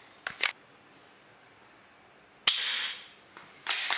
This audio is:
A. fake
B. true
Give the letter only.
B